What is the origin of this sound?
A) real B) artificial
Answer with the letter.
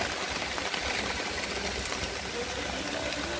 A